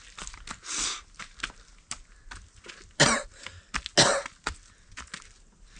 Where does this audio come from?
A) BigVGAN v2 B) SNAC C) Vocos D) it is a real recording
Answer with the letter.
D